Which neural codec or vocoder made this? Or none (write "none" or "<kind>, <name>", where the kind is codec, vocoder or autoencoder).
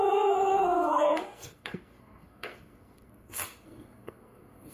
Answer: codec, SNAC